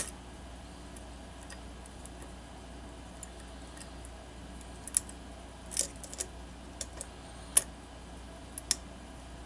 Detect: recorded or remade recorded